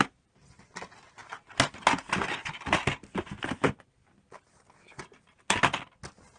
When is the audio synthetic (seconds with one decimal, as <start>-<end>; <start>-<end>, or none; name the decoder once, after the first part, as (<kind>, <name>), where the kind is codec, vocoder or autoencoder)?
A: none